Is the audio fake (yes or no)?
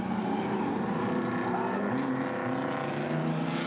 no